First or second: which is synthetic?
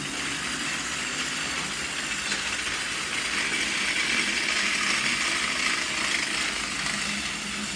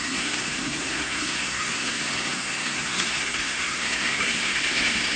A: second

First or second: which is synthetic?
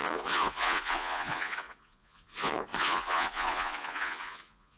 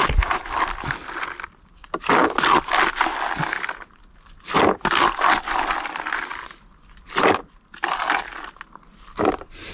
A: first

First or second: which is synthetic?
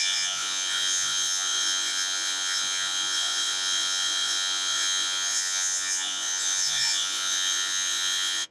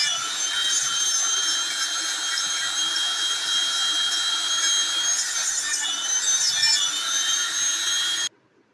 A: first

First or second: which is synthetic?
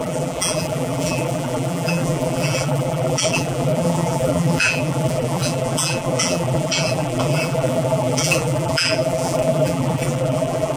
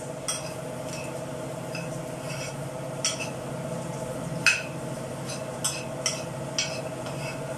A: first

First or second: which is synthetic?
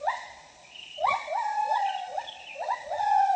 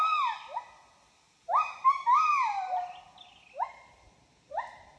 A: first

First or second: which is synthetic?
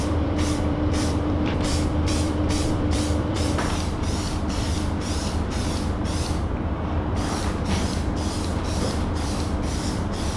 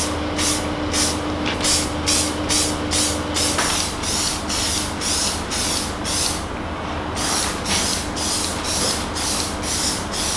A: first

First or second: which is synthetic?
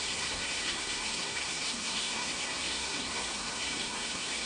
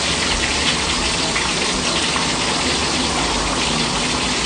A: first